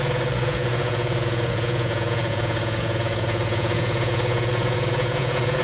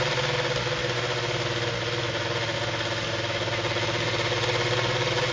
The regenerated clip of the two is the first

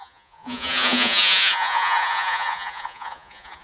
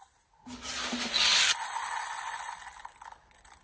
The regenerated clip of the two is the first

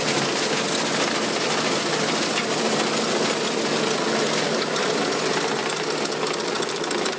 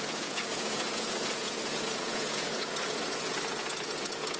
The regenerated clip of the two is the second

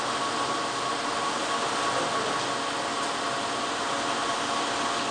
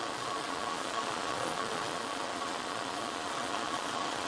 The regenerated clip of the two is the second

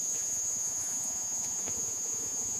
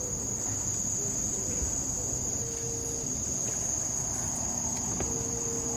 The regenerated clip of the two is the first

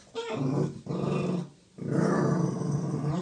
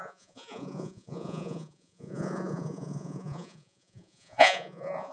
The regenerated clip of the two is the second